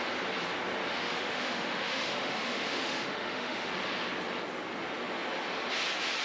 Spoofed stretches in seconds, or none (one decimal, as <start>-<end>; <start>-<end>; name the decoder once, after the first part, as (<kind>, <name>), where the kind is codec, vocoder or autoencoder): 0.9-3.7 (autoencoder, DAC-VAE)